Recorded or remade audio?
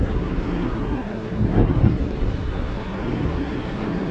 remade